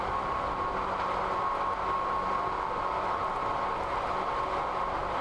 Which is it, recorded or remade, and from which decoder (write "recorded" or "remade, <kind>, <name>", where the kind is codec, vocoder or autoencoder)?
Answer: recorded